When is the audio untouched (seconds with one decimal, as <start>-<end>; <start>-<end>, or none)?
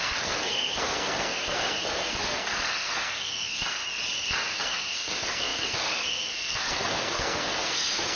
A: 3.8-4.3